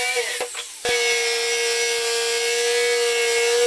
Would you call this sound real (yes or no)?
yes